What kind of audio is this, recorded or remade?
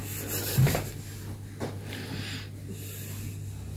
recorded